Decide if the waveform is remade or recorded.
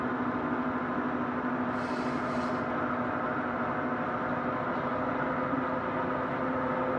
recorded